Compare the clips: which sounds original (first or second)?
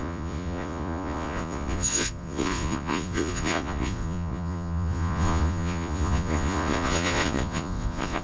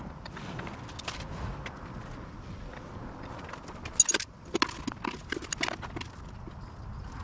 second